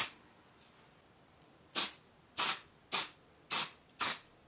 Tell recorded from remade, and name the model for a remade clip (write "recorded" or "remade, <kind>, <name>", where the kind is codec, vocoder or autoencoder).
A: recorded